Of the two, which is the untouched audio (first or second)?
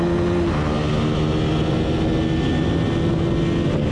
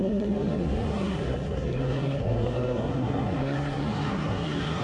first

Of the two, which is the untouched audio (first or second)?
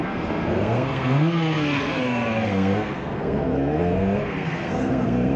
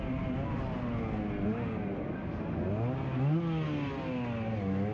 second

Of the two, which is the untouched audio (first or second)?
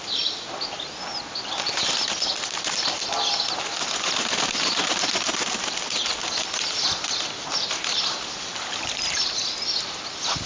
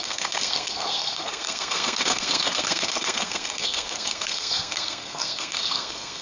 first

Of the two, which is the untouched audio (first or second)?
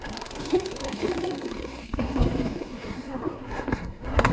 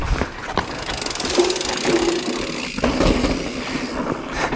second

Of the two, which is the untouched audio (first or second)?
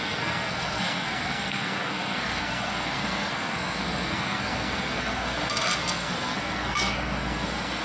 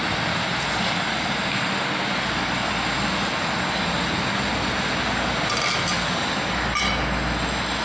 second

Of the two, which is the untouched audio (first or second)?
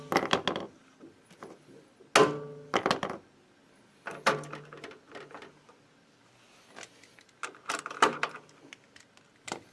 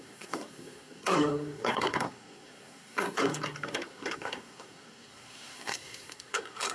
first